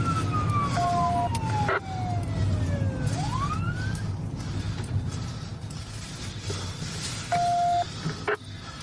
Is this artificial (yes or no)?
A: no